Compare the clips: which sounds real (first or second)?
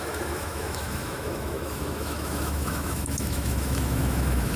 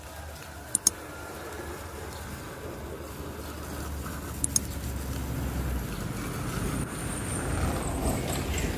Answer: second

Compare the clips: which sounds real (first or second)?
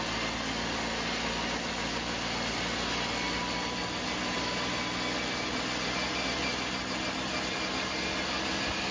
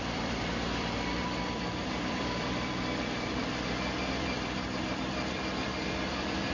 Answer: first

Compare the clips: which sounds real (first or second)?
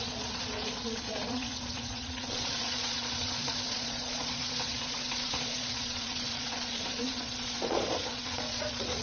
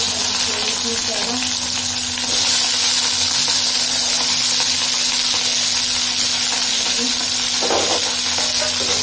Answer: second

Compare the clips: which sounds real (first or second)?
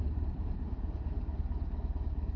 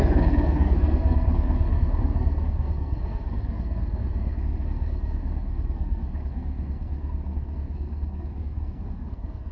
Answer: first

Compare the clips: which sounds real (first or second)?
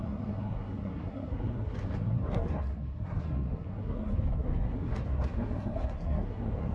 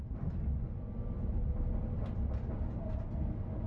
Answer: second